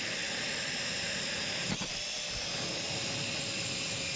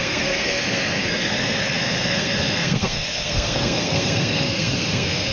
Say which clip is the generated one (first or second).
second